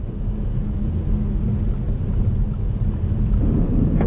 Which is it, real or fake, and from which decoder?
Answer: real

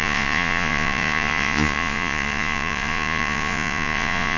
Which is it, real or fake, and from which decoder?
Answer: fake, vocoder, Vocos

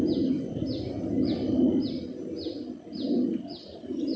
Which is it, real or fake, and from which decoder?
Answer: real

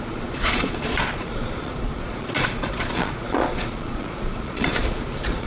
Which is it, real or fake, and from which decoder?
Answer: fake, vocoder, Vocos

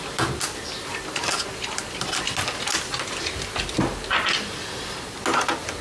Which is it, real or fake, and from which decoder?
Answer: real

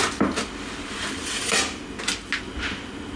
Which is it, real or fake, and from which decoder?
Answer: real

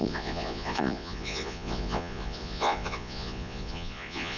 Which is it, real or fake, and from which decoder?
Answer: fake, vocoder, Vocos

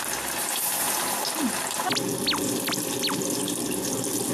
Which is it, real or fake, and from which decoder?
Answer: real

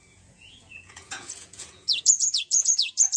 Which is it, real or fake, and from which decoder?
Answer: fake, vocoder, Vocos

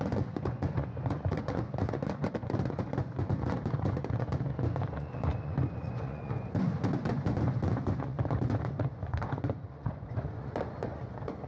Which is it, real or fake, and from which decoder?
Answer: fake, vocoder, Vocos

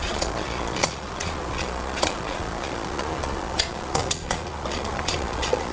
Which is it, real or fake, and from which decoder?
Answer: fake, vocoder, Vocos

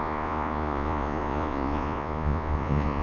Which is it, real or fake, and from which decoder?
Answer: fake, vocoder, Vocos